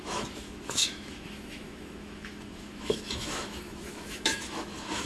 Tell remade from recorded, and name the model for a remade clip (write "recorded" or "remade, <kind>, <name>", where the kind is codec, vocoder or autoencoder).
remade, autoencoder, DAC-VAE